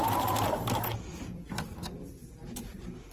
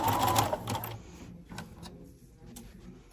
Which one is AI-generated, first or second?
first